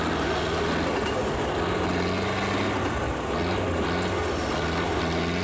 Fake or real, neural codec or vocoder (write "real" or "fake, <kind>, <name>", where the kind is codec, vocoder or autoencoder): real